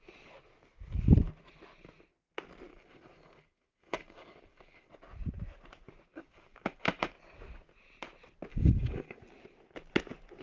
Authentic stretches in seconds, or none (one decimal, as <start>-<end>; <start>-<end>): 0.0-2.7; 4.9-6.1; 7.1-8.5; 9.2-10.4